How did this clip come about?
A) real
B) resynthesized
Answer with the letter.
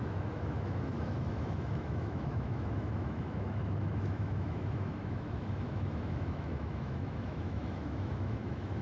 B